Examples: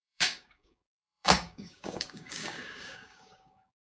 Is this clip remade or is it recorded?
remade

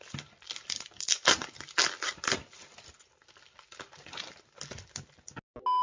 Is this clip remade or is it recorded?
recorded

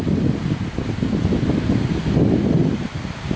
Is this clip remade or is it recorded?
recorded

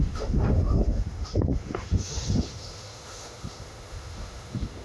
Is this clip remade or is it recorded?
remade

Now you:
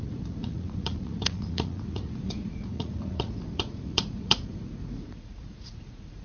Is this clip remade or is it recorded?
remade